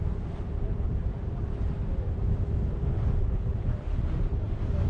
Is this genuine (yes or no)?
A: yes